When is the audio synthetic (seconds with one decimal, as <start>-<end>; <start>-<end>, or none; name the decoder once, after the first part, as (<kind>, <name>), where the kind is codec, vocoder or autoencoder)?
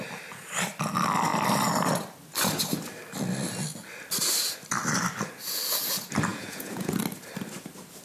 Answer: 6.3-7.0 (vocoder, Vocos)